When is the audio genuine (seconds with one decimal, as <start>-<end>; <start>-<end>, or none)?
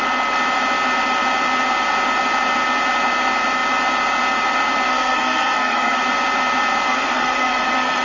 0.0-4.9; 6.0-6.9